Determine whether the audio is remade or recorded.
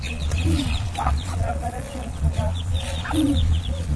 remade